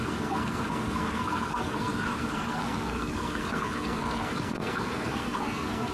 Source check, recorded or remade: remade